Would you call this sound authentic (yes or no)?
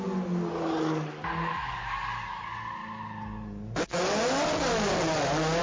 yes